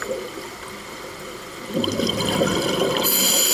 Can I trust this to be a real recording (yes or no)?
yes